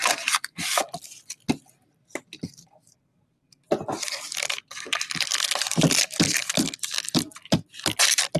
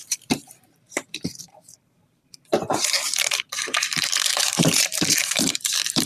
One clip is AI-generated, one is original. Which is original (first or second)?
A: first